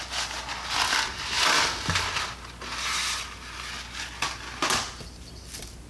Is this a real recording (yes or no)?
yes